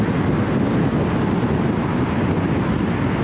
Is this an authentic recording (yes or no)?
yes